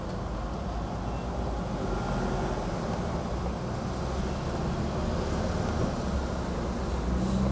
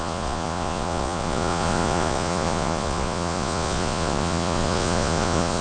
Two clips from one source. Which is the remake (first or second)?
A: second